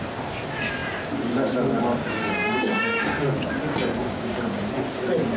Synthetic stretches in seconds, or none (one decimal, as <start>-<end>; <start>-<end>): none